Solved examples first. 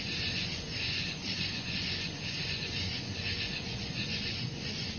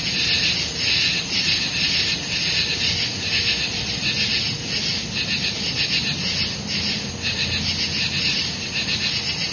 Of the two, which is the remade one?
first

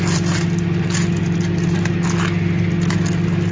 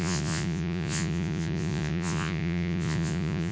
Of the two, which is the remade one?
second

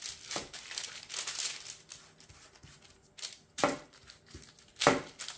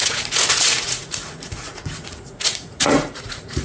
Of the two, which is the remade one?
second